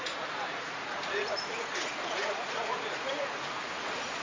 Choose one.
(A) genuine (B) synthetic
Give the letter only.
B